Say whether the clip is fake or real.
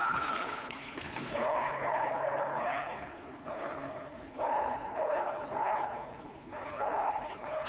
fake